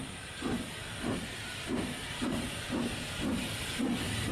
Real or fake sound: fake